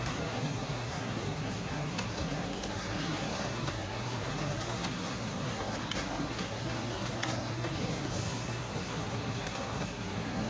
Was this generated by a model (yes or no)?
yes